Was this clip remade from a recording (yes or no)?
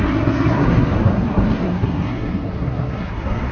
yes